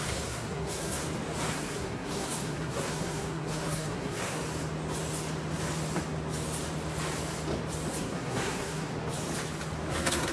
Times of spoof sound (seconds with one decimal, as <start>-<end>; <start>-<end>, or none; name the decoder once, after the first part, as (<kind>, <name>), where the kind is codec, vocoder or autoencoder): 0.0-1.0 (codec, SNAC); 1.5-4.4; 8.0-8.9; 9.9-10.3